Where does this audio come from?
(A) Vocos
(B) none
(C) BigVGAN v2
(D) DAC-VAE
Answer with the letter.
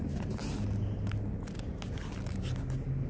B